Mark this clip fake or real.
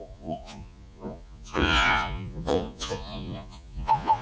fake